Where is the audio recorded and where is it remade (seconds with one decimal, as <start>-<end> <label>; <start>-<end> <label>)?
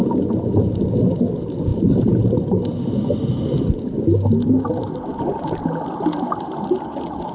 0.0-7.3 recorded